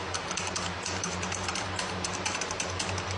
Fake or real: fake